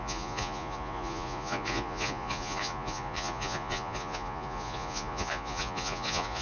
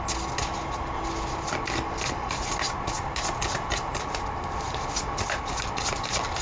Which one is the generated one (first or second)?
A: first